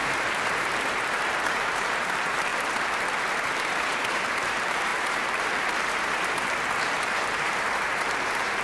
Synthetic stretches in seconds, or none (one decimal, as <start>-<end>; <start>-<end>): 0.0-2.5; 3.4-8.6